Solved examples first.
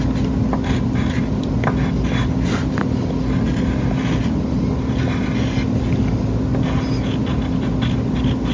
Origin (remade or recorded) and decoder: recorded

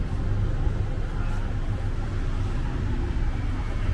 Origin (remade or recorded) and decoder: recorded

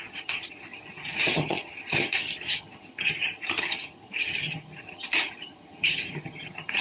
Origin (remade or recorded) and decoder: remade, vocoder, HiFi-GAN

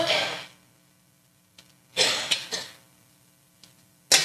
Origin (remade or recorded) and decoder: recorded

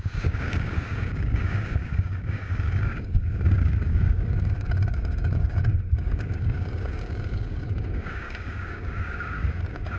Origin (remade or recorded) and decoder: remade, codec, DAC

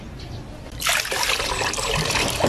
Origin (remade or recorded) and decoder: remade, vocoder, BigVGAN v2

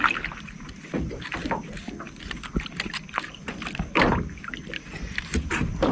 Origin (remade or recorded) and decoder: recorded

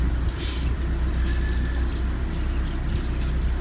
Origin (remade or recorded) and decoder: recorded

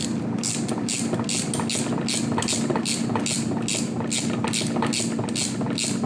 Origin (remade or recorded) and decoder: recorded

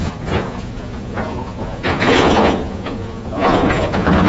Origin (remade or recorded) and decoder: remade, vocoder, Vocos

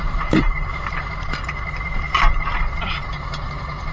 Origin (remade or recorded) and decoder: remade, vocoder, BigVGAN v2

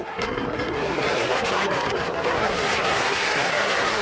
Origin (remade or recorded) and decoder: remade, codec, SNAC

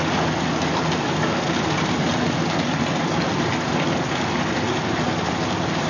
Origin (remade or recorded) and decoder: remade, vocoder, BigVGAN v2